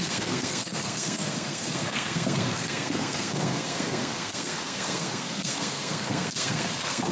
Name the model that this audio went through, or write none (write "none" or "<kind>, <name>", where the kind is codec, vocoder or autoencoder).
codec, SNAC